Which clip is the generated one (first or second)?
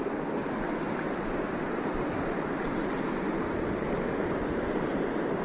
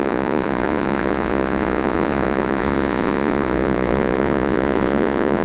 second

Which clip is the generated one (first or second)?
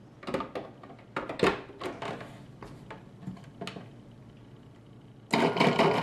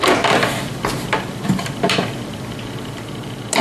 second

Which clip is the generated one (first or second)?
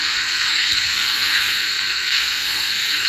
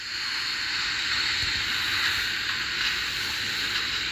first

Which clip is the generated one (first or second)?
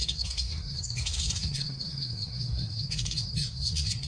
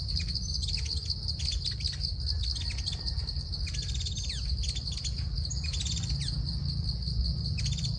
first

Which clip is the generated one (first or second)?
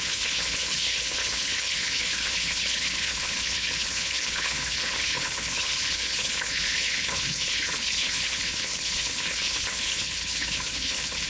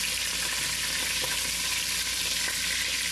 first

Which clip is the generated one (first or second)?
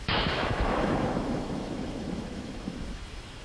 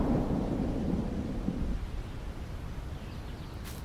first